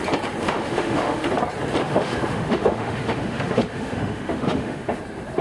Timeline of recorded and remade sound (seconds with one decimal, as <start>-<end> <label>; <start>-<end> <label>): 0.0-0.4 recorded; 0.4-1.3 remade; 1.3-1.8 recorded; 1.8-5.0 remade; 5.0-5.4 recorded